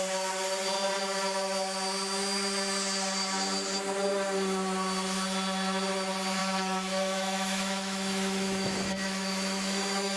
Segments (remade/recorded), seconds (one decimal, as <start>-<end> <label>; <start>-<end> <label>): 0.0-6.4 recorded; 6.4-10.2 remade